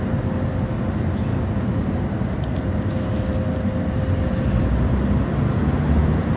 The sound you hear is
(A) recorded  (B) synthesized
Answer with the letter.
A